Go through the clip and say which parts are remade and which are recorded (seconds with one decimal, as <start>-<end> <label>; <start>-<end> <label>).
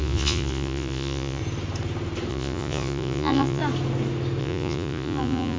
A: 0.0-1.4 remade; 1.4-2.3 recorded; 2.3-3.6 remade; 3.6-4.4 recorded; 4.4-5.6 remade